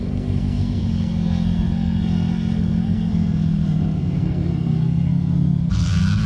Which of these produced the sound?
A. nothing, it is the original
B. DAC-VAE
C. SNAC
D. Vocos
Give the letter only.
C